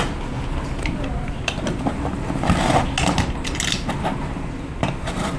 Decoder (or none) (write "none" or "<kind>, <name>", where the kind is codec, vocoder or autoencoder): none